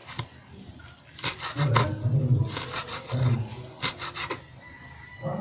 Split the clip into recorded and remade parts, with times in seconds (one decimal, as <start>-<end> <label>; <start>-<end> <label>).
0.0-5.4 recorded